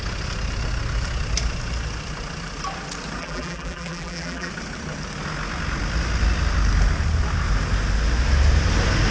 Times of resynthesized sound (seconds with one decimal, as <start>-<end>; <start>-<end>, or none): 3.2-4.5